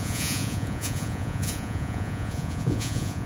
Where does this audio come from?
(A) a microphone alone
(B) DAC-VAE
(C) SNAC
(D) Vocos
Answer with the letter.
D